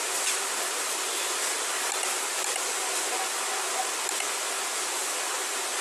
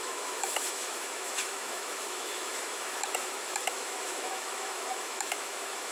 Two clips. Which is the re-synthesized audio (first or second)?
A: second